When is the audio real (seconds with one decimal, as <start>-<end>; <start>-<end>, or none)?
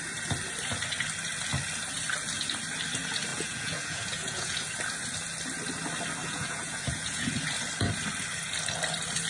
0.0-3.3; 4.7-6.2; 7.3-9.3